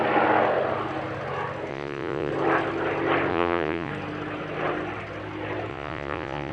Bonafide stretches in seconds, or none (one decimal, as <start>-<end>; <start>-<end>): 0.0-1.7; 2.3-3.3; 3.9-5.7